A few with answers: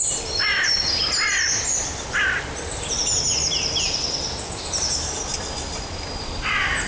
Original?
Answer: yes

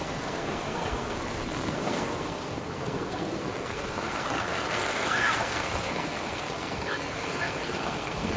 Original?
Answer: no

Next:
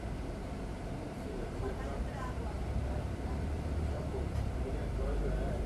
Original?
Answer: no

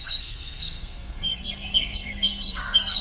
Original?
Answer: no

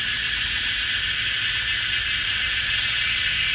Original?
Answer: yes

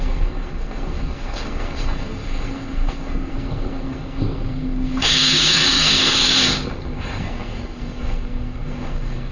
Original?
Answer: no